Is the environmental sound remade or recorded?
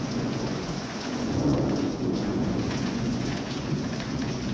remade